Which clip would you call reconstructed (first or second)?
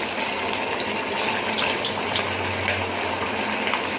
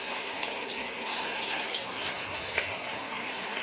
second